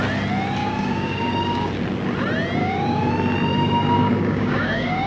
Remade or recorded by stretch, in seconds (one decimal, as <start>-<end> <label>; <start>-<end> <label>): 0.0-0.6 recorded; 0.6-1.7 remade; 1.7-2.6 recorded; 2.6-3.1 remade; 3.1-3.5 recorded; 3.5-5.1 remade